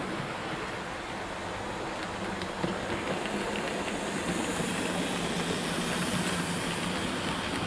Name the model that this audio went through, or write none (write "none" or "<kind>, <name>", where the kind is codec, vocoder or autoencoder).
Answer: none